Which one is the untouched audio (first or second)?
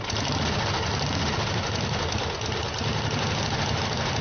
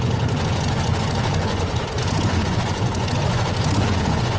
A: first